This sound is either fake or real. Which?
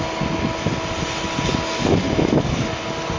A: real